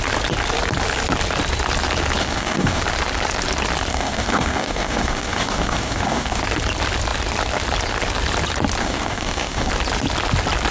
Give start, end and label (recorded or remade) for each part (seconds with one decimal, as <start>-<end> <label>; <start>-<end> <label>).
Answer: 0.0-2.2 recorded; 2.2-2.8 remade; 2.8-3.9 recorded; 3.9-6.4 remade; 6.4-8.8 recorded; 8.8-9.7 remade; 9.7-10.7 recorded